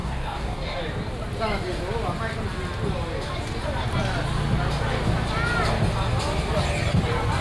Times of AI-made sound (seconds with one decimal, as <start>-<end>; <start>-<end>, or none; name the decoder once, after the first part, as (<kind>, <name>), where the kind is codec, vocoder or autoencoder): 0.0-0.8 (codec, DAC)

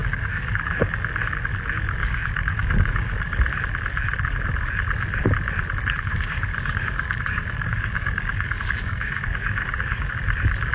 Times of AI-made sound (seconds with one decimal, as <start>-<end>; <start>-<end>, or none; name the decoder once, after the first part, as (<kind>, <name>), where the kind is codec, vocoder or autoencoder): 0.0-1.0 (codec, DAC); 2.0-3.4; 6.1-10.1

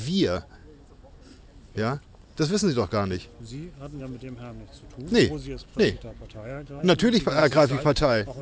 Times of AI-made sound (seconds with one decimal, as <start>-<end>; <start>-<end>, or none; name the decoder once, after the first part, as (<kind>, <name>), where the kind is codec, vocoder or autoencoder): 5.7-6.8 (codec, DAC); 7.4-8.4

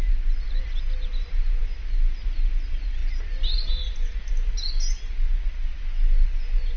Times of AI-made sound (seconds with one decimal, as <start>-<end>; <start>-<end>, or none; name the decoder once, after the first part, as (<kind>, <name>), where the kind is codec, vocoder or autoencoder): none